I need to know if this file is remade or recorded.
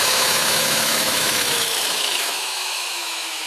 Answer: remade